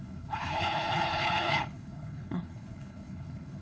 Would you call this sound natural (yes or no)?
no